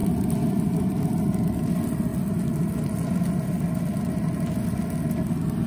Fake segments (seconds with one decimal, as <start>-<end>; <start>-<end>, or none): none